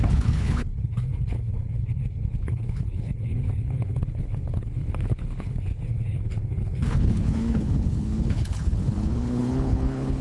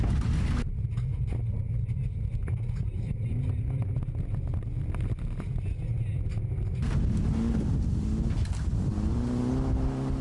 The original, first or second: second